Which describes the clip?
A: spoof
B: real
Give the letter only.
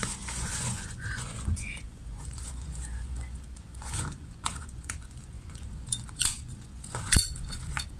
A